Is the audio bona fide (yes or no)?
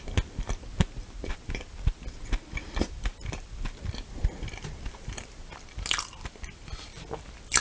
yes